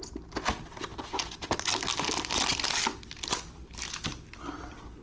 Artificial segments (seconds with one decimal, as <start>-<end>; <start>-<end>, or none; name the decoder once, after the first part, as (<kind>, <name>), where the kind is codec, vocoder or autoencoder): none

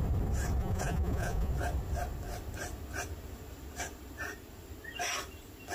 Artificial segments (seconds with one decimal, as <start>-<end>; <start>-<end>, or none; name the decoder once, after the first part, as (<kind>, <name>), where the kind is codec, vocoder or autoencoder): 0.6-1.5 (vocoder, Vocos)

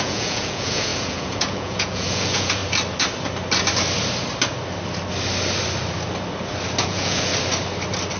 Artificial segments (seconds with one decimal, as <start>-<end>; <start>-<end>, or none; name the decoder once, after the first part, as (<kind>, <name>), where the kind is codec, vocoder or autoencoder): 0.0-2.6 (vocoder, Vocos); 6.8-7.3

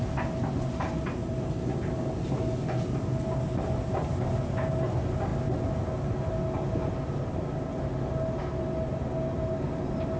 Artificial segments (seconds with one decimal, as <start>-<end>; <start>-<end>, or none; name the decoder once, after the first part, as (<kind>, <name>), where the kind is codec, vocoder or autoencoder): none

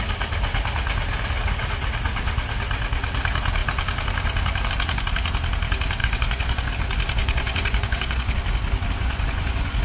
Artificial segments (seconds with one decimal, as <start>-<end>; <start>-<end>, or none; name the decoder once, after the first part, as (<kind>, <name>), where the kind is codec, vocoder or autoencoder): 6.0-6.7 (vocoder, Vocos); 7.2-8.4; 9.0-9.8